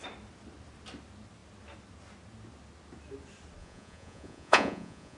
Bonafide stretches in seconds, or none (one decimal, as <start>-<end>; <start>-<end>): 0.0-3.6

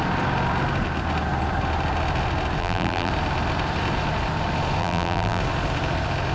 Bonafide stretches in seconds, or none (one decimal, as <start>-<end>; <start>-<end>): 0.0-2.6; 3.1-4.8; 5.4-6.3

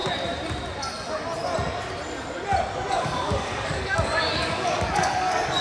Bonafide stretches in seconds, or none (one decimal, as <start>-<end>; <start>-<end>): 0.0-2.9

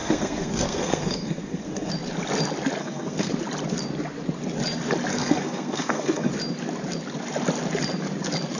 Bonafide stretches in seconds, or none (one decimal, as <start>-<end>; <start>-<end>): 1.9-2.8; 3.3-5.1; 6.3-8.6

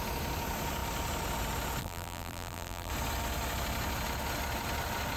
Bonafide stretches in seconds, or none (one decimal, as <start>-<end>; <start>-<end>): 0.0-1.8; 2.9-5.2

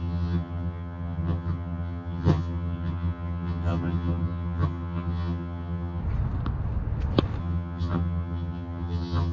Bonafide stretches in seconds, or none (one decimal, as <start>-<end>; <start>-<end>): 6.0-7.4

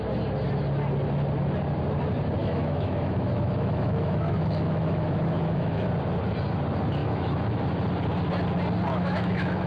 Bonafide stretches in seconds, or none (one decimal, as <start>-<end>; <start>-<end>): 0.0-2.4; 5.9-7.0; 7.6-8.9

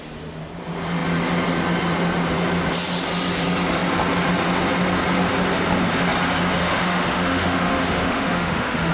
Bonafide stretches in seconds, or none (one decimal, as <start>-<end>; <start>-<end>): 0.0-6.6